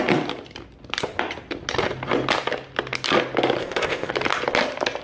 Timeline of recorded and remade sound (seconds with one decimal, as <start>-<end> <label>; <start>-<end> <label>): 0.0-3.6 recorded; 3.6-4.1 remade; 4.1-5.0 recorded